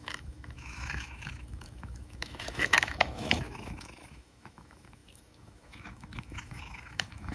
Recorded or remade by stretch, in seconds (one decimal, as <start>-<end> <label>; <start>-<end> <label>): 0.0-7.3 remade